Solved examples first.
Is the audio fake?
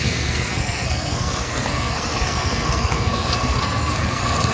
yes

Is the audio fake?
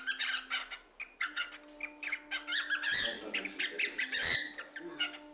no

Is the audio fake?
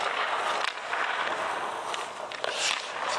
no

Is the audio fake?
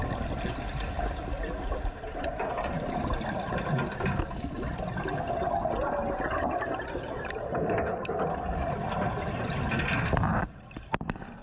no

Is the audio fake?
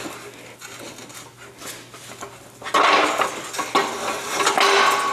no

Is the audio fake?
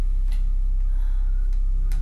no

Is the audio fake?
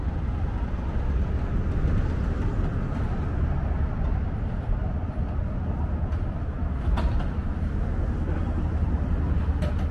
no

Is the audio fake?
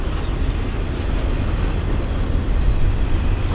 no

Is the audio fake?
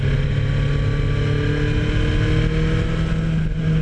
no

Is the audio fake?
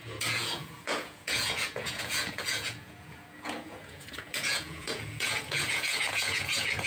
yes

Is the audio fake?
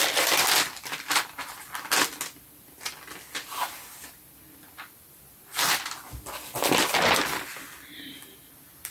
no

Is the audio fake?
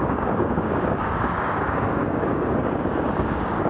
yes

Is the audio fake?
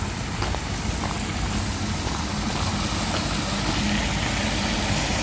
no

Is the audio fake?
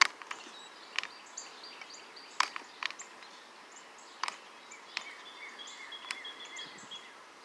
no